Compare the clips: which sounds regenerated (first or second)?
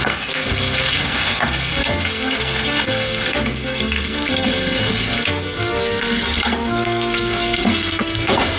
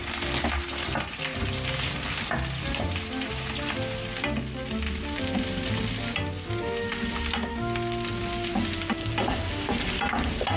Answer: first